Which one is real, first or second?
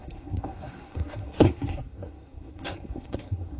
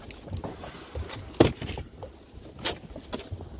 second